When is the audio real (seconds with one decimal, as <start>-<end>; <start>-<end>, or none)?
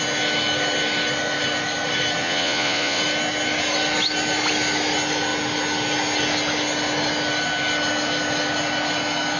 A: 0.0-2.2; 3.0-9.4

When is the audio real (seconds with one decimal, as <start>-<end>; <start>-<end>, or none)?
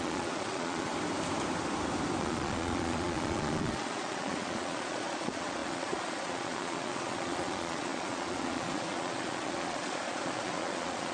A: 0.9-2.2